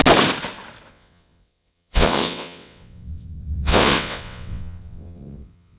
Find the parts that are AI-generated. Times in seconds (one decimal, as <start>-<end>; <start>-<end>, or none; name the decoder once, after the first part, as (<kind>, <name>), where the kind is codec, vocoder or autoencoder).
0.9-5.8 (vocoder, WaveNeXt)